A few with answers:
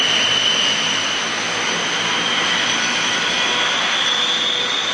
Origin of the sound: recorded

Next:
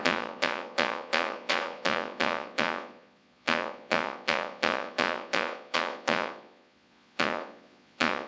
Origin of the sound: remade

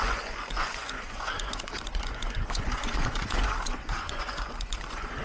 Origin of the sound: remade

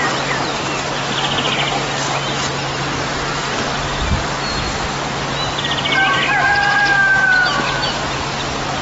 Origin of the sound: recorded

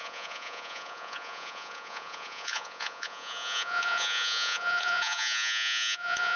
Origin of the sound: remade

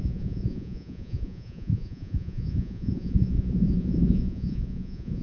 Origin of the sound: remade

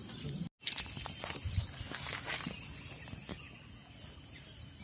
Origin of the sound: recorded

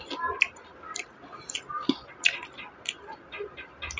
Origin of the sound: recorded